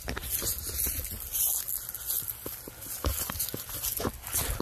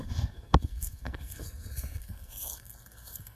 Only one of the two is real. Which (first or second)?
first